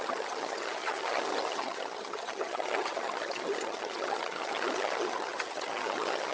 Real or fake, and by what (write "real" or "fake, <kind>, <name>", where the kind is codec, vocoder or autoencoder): fake, vocoder, HiFi-GAN